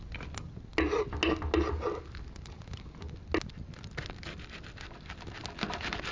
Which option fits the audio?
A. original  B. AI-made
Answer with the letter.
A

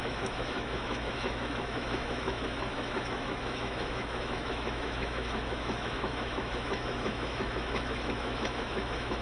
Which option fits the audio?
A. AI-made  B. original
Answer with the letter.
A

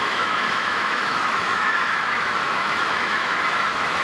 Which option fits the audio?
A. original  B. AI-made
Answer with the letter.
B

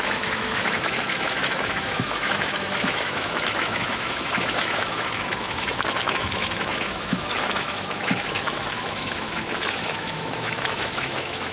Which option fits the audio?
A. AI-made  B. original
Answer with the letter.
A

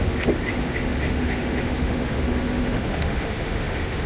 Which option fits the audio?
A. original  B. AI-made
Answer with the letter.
B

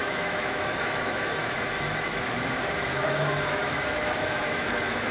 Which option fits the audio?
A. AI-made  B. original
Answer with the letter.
A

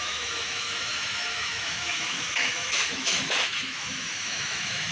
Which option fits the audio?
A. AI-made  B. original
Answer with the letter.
A